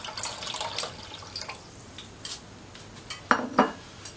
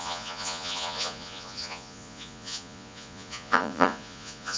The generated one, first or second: second